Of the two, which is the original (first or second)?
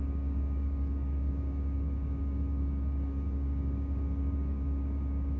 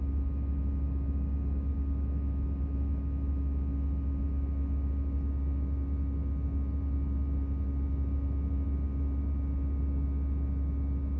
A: second